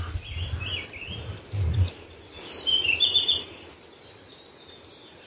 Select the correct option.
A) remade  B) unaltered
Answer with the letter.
B